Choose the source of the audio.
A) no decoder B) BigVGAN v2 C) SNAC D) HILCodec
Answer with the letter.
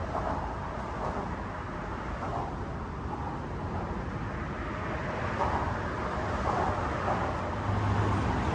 A